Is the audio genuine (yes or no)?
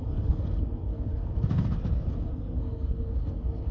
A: no